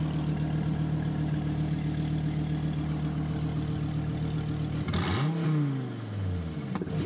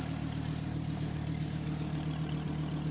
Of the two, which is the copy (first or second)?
second